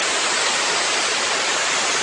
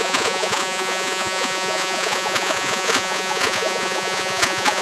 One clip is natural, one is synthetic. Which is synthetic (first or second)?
second